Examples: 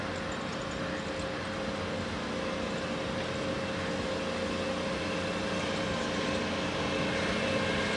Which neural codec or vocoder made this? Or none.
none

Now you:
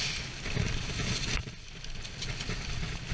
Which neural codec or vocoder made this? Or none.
none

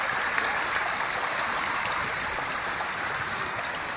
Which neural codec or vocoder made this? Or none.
none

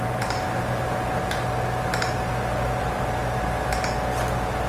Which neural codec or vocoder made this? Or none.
none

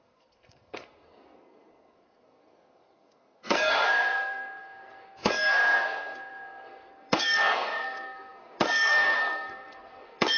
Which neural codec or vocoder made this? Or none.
codec, SNAC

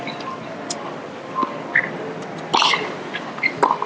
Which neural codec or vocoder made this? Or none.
none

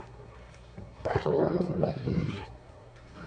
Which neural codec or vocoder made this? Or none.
codec, SNAC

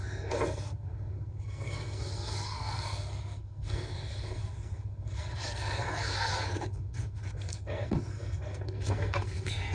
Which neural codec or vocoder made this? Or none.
codec, SNAC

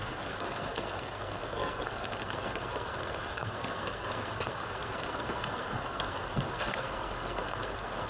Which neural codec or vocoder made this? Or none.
codec, SNAC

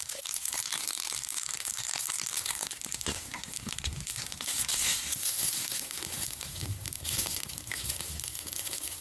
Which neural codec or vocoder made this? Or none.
codec, SNAC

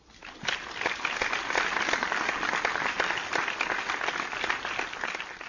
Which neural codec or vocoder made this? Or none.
none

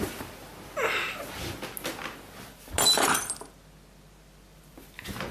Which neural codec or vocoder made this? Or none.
none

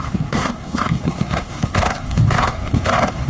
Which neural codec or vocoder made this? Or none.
codec, SNAC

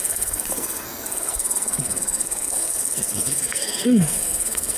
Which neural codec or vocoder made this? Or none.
codec, SNAC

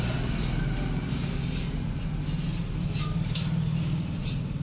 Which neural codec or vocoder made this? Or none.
none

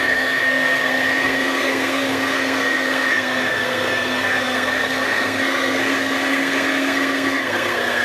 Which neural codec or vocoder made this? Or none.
codec, SNAC